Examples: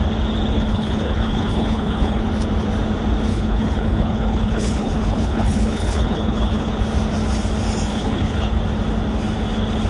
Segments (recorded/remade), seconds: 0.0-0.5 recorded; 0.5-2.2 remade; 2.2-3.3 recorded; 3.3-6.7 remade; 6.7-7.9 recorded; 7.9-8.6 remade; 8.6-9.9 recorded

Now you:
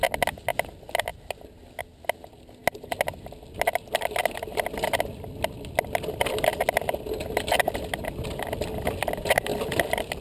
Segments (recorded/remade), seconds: 0.0-10.2 recorded

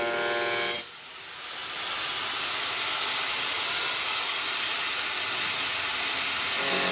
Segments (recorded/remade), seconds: 0.0-6.9 recorded